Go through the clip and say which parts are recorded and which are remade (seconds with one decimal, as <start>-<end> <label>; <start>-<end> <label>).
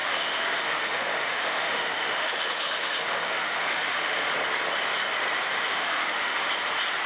0.0-4.3 remade; 4.3-5.5 recorded; 5.5-6.5 remade; 6.5-7.1 recorded